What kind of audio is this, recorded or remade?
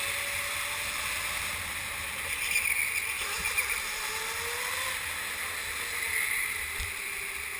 recorded